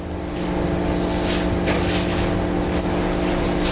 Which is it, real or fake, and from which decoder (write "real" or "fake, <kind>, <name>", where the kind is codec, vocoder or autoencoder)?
real